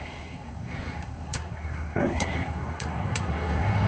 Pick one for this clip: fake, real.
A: fake